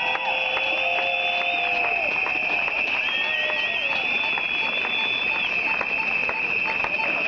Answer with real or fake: real